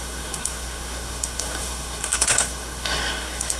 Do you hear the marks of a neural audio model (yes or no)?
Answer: yes